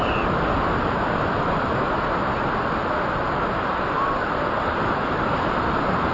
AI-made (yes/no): no